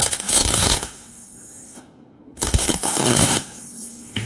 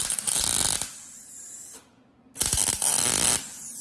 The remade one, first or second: first